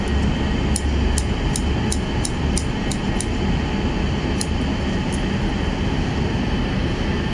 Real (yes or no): yes